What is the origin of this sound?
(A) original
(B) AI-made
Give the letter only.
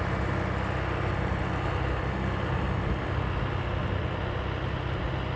A